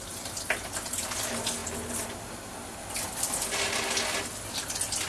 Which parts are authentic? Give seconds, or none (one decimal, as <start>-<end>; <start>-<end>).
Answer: 0.0-5.1